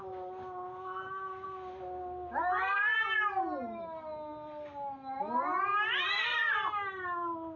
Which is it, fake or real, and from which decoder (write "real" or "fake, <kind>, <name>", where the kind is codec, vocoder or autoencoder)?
real